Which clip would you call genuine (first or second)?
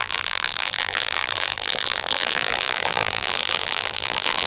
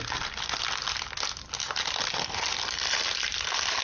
second